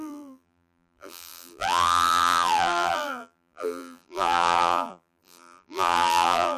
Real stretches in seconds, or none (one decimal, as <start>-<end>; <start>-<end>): none